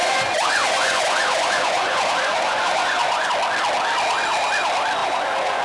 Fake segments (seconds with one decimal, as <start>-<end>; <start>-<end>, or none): 0.0-3.3; 5.0-5.6